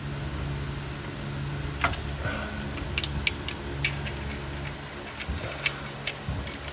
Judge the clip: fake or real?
real